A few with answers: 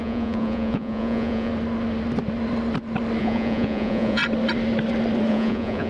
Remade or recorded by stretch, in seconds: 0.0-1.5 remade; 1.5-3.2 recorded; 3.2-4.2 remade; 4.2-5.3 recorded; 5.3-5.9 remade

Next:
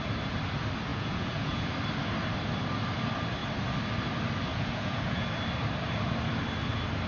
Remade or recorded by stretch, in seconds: 0.0-0.9 recorded; 0.9-1.7 remade; 1.7-4.5 recorded; 4.5-5.3 remade; 5.3-7.1 recorded

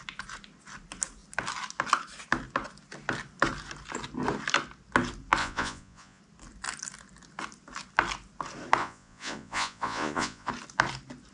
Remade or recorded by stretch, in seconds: 0.0-5.4 recorded; 5.4-6.2 remade; 6.2-8.8 recorded; 8.8-10.5 remade; 10.5-11.3 recorded

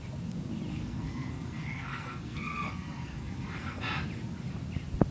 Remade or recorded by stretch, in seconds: 0.0-0.7 recorded; 0.7-3.8 remade; 3.8-5.1 recorded

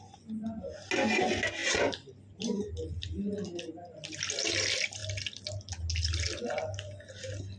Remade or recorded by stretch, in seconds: 0.0-7.6 recorded

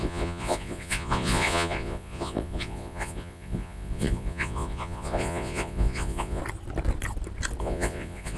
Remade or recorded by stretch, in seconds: 0.0-6.4 remade; 6.4-7.6 recorded; 7.6-8.4 remade

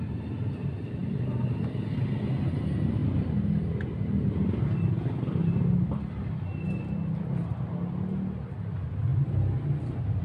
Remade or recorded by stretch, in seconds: 0.0-10.2 recorded